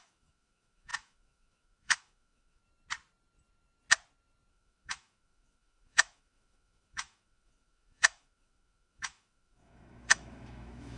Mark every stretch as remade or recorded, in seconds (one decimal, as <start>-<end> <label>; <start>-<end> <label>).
0.0-2.6 remade; 2.6-4.5 recorded; 4.5-11.0 remade